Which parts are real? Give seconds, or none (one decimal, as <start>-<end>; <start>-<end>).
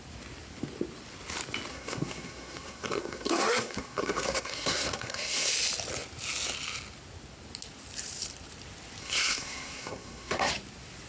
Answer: 0.0-1.7; 5.5-9.0; 10.5-11.1